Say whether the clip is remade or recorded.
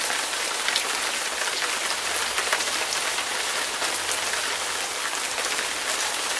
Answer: recorded